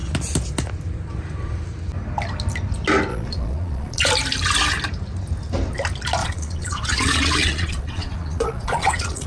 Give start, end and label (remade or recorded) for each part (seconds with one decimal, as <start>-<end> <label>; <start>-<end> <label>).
0.0-3.1 recorded; 3.1-4.1 remade; 4.1-6.2 recorded; 6.2-9.3 remade